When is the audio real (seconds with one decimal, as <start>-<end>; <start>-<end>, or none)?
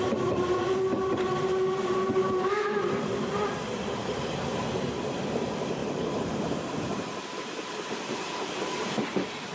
0.0-5.8; 7.0-9.5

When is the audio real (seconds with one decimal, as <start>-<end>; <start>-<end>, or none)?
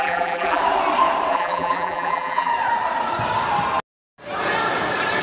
0.6-1.3; 2.5-5.2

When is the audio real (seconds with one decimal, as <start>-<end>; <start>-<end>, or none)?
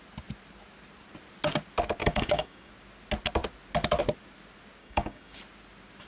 0.0-2.0; 2.7-4.8; 5.4-6.1